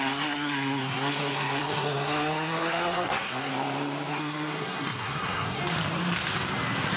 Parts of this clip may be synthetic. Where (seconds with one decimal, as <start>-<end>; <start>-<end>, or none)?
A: 0.0-3.5; 4.1-5.6